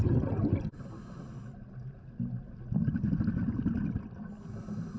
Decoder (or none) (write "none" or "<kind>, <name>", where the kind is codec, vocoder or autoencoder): none